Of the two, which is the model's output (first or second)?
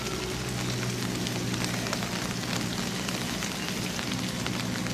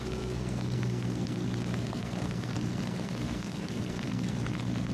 second